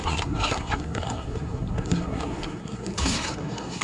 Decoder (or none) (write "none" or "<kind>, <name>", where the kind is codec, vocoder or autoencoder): codec, SNAC